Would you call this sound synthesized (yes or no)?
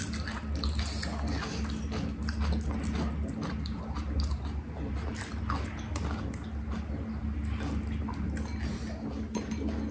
no